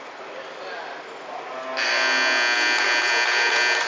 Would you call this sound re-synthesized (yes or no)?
no